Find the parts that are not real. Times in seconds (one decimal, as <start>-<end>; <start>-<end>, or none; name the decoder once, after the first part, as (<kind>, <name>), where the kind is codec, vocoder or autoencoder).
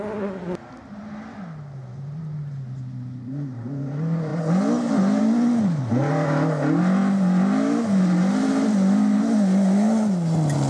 none